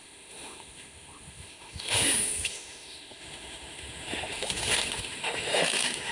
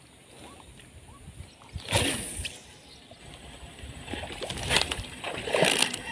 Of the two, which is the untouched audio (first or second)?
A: second